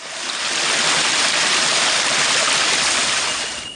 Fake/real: real